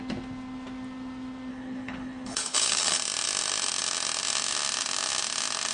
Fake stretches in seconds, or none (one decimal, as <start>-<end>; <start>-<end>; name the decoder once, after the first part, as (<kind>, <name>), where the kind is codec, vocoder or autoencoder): 1.5-3.0 (codec, HILCodec)